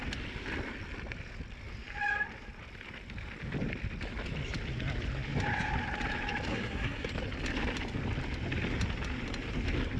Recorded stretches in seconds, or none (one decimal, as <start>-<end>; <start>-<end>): 0.0-6.5; 7.1-10.0